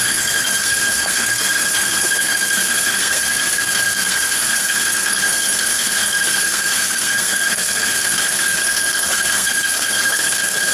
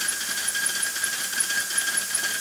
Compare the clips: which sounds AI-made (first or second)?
first